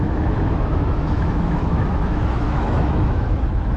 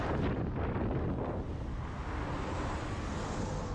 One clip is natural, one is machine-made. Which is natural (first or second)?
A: second